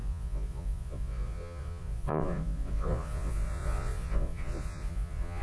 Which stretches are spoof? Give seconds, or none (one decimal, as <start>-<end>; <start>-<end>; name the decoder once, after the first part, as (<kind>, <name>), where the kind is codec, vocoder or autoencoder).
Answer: 0.0-5.4 (vocoder, Vocos)